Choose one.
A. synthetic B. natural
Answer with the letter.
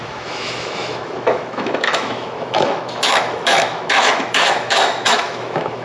A